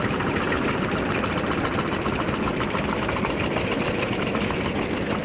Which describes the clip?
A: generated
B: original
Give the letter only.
B